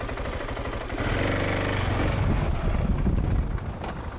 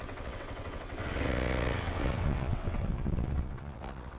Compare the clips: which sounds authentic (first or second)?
first